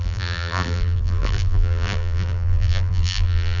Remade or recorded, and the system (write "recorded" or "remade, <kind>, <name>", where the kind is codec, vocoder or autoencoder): remade, vocoder, BigVGAN v2